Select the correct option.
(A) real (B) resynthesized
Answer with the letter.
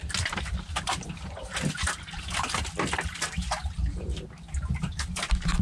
A